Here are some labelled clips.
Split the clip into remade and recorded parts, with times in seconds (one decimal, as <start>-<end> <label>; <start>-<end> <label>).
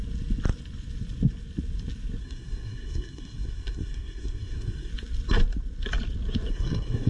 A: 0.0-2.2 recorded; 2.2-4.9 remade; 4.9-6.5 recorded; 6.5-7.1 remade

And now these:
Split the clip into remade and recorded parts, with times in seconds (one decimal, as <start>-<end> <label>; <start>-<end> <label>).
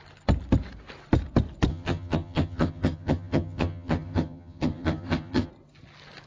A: 0.0-1.7 recorded; 1.7-5.5 remade; 5.5-6.3 recorded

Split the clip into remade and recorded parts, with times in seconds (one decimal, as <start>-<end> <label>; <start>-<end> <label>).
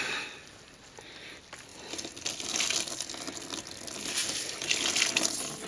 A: 0.0-5.7 recorded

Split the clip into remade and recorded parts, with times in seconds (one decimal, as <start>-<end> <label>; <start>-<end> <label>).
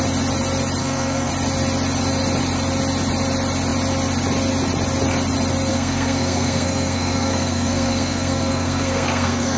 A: 0.0-0.8 recorded; 0.8-1.3 remade; 1.3-5.7 recorded; 5.7-9.6 remade